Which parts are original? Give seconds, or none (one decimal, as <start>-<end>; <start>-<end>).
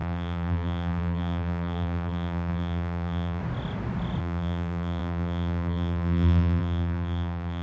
3.4-4.2